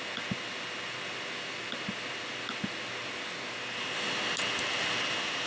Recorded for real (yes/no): yes